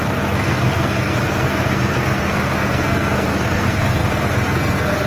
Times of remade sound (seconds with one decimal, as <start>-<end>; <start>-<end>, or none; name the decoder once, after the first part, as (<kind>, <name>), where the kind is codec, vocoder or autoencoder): 0.0-5.1 (codec, SNAC)